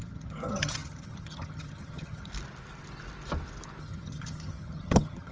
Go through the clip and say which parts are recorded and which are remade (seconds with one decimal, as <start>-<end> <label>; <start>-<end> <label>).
0.0-2.3 remade; 2.3-3.8 recorded; 3.8-5.3 remade